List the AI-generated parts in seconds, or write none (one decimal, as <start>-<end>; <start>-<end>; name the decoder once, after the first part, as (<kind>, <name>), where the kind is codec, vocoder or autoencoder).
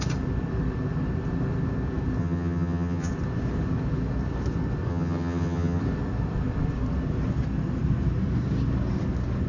2.2-3.1 (vocoder, HiFi-GAN); 4.9-5.8